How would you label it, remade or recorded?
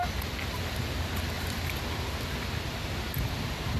recorded